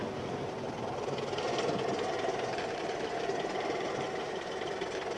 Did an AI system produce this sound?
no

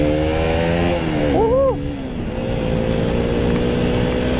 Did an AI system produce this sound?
no